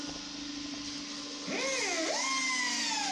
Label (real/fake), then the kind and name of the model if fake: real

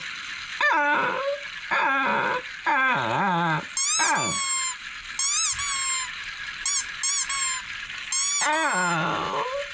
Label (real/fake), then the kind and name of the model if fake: real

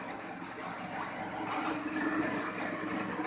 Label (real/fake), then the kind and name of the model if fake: real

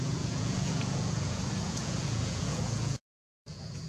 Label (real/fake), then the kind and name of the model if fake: fake, vocoder, Vocos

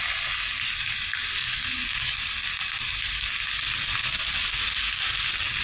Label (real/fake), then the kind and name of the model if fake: real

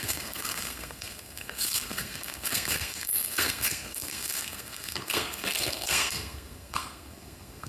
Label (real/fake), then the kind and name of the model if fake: fake, codec, SNAC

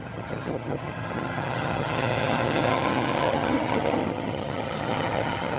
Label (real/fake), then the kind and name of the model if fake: fake, vocoder, HiFi-GAN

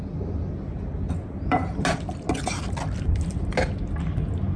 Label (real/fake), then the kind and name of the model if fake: real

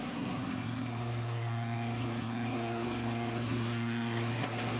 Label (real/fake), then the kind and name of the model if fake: fake, codec, SNAC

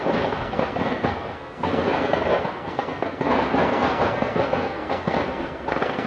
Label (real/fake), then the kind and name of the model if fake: fake, codec, SNAC